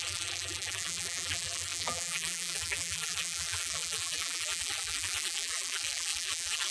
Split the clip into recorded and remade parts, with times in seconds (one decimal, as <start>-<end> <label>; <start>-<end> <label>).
0.0-6.7 remade